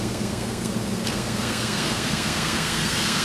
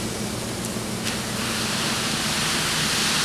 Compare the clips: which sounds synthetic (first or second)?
first